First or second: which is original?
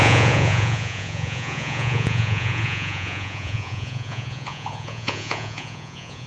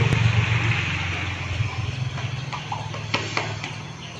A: second